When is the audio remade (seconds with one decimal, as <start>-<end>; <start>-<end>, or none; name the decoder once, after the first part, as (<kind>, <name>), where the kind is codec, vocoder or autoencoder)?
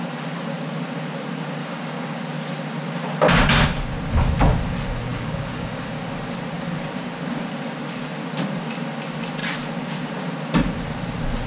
1.6-2.2 (codec, DAC); 5.1-5.9